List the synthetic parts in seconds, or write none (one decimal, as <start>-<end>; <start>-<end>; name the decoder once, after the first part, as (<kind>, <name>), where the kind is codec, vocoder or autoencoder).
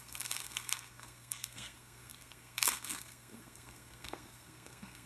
0.0-5.1 (codec, SNAC)